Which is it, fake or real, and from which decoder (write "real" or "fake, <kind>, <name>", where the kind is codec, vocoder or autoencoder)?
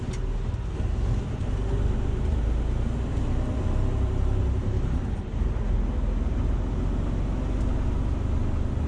real